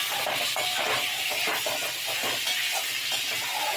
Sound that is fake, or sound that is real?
real